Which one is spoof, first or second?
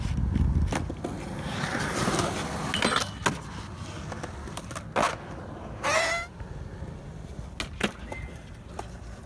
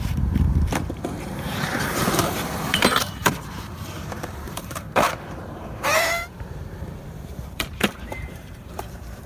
second